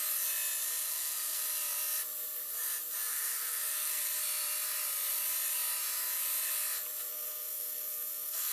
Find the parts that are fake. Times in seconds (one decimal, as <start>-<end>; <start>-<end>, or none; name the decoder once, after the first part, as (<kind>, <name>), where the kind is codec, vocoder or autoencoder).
0.8-1.4 (codec, SNAC); 3.1-4.0; 7.1-8.5